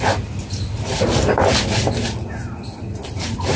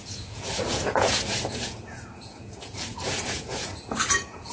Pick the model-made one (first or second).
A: second